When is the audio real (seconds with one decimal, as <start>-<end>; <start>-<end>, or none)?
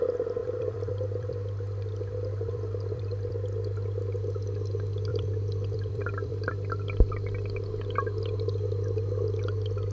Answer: 0.0-0.4; 3.3-5.1; 6.5-9.9